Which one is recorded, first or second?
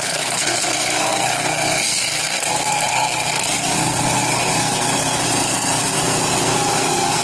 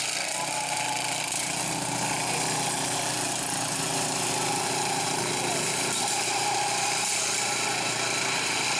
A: second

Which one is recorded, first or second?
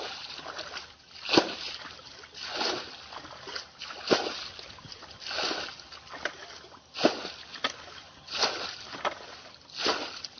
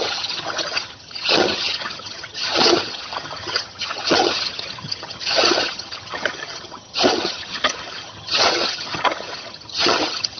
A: first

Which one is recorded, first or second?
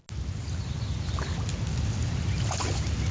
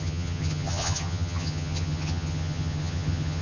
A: first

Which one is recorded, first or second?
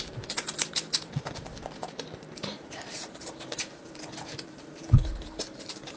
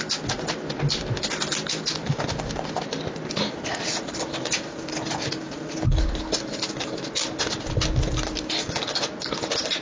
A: second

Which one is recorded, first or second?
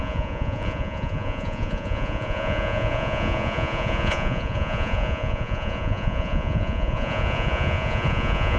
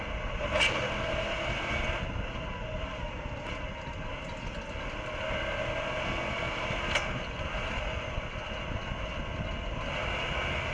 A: second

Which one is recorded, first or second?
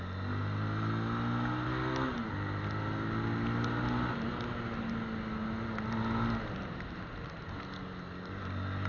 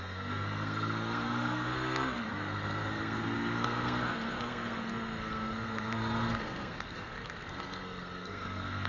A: first